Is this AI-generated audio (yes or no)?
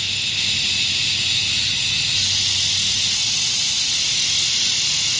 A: no